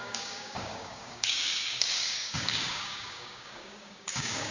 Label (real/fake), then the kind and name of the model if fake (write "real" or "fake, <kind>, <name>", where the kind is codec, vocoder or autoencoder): fake, codec, DAC